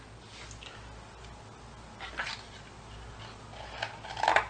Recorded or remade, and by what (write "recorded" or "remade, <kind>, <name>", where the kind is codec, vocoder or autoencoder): recorded